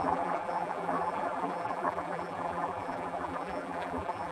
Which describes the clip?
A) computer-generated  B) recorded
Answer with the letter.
A